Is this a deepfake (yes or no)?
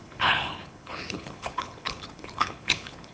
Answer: yes